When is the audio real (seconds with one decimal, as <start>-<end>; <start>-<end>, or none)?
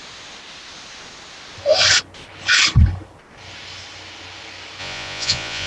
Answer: 0.0-4.8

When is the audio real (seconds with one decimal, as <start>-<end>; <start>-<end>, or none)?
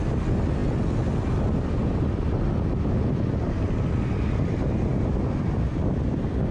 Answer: 0.0-6.5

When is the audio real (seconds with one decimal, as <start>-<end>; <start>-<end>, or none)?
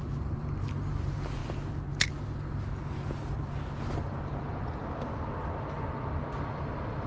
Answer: 0.0-7.1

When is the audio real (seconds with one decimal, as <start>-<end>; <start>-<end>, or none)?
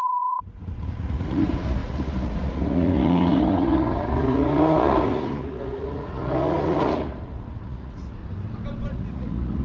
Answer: 8.2-8.9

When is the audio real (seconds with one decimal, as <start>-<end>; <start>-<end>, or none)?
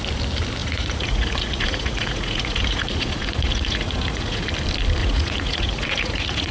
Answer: 0.0-0.6; 4.5-5.0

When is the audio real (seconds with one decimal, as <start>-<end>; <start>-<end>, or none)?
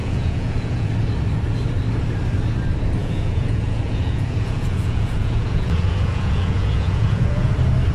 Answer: 0.9-3.0; 7.5-7.9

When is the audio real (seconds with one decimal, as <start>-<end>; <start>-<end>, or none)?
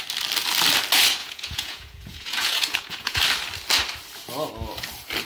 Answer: 0.0-1.2; 3.2-5.2